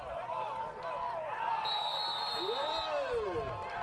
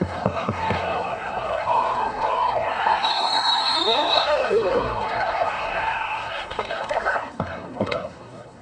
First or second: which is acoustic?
first